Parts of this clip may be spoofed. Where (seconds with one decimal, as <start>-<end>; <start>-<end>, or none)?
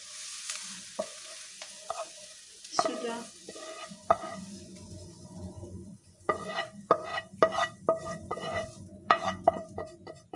0.0-7.1; 8.0-10.4